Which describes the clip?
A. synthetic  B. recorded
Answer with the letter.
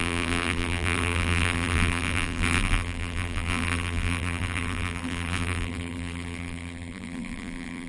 A